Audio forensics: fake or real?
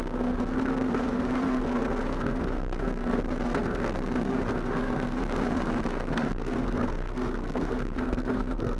fake